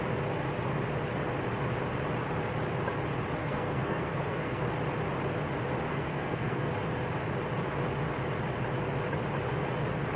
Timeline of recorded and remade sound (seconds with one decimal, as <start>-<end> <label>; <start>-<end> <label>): 0.0-3.4 recorded; 3.4-4.6 remade; 4.6-5.9 recorded; 5.9-6.7 remade; 6.7-10.2 recorded